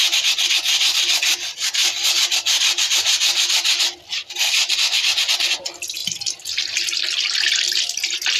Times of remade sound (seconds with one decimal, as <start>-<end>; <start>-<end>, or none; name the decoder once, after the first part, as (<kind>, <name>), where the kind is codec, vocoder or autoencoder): 1.8-4.7 (vocoder, BigVGAN v2); 6.0-8.4